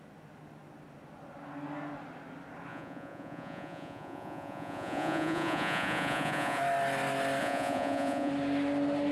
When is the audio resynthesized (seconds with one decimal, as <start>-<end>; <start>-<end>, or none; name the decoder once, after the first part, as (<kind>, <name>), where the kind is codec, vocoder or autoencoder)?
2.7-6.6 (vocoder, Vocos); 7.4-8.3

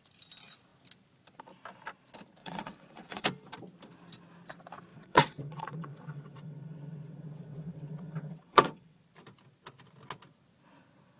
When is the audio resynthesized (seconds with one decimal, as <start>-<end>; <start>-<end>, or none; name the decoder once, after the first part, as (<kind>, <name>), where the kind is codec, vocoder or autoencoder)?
2.4-3.2 (vocoder, WaveNeXt); 4.9-9.0

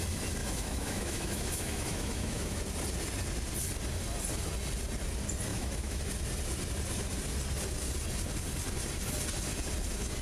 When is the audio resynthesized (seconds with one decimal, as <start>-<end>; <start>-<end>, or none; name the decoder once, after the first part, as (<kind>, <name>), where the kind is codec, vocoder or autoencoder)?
0.4-2.6 (autoencoder, DAC-VAE); 5.5-6.0